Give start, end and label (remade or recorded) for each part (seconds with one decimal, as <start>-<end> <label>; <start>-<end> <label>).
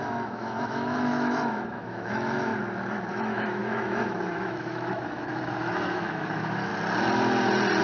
0.0-2.5 remade; 2.5-3.1 recorded; 3.1-6.7 remade; 6.7-7.8 recorded